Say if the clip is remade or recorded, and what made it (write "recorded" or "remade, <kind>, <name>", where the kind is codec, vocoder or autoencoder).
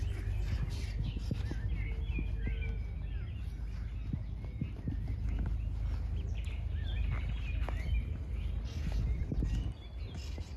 recorded